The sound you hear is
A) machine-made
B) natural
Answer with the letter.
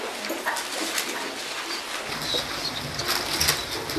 B